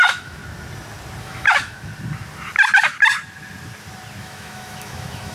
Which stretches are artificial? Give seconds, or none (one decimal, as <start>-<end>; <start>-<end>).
0.0-0.4; 1.2-1.9; 4.2-5.3